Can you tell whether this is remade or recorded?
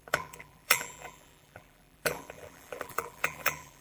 remade